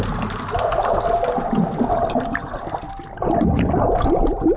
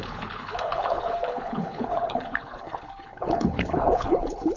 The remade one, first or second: second